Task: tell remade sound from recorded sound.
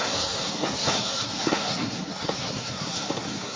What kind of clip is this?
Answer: remade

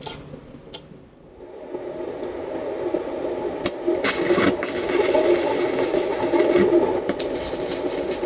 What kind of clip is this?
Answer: recorded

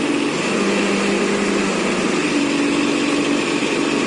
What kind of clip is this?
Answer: recorded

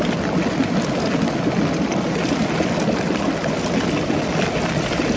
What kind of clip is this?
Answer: recorded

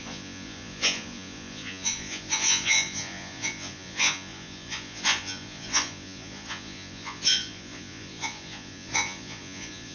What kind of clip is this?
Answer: remade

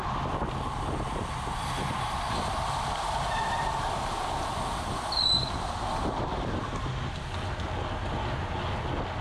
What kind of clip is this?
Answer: recorded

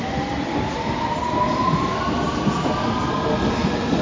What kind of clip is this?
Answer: recorded